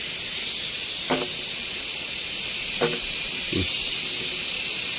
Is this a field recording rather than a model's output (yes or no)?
yes